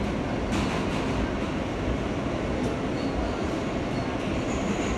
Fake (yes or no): no